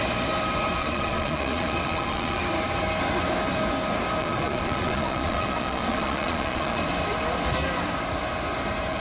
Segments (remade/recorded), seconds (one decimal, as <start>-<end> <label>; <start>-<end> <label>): 0.0-0.8 recorded; 0.8-2.4 remade; 2.4-4.2 recorded; 4.2-6.8 remade; 6.8-9.0 recorded